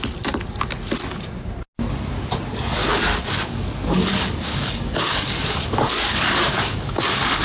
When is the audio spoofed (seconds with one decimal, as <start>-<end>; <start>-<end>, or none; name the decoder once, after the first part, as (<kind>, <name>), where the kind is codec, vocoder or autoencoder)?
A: 2.8-7.4 (codec, DAC)